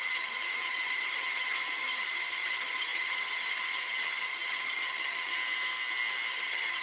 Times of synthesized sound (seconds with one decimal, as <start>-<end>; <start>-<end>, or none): 0.0-5.4; 6.3-6.8